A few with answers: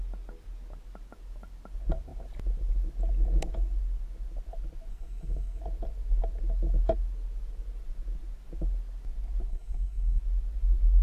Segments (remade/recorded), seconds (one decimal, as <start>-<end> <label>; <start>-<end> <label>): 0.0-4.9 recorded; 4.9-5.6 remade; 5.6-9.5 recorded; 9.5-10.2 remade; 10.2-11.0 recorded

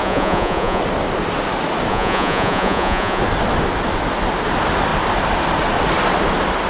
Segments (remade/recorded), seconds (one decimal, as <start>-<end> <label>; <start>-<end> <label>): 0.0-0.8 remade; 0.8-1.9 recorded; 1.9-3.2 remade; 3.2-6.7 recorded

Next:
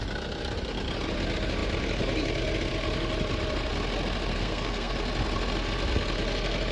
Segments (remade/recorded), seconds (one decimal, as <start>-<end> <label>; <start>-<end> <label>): 0.0-4.3 recorded; 4.3-4.9 remade; 4.9-6.7 recorded

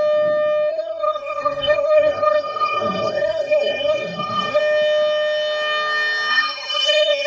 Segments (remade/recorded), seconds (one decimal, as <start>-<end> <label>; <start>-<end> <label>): 0.0-0.7 recorded; 0.7-4.6 remade; 4.6-6.3 recorded; 6.3-7.3 remade

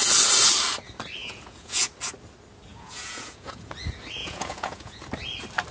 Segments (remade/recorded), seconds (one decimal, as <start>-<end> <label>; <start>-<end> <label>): 0.0-1.2 recorded; 1.2-1.9 remade; 1.9-2.7 recorded; 2.7-3.7 remade; 3.7-4.2 recorded; 4.2-5.0 remade; 5.0-5.7 recorded